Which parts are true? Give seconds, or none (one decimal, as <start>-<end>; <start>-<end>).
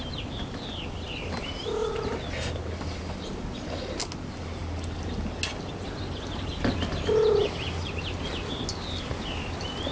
0.0-9.9